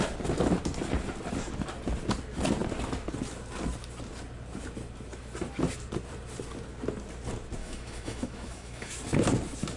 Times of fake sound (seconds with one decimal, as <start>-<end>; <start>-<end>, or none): 7.6-8.9